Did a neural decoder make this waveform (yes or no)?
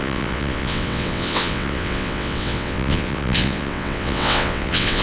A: yes